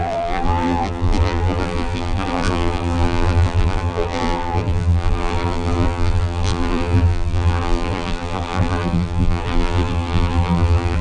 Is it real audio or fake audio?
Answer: fake